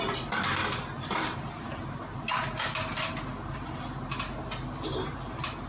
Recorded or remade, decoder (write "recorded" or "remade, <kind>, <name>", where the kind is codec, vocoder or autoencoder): recorded